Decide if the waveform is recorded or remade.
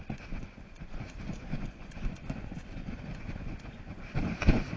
remade